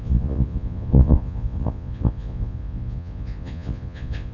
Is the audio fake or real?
fake